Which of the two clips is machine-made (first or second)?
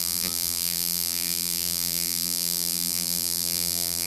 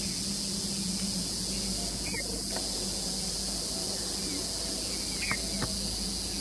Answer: first